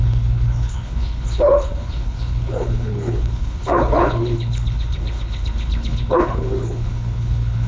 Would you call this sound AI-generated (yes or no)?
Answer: yes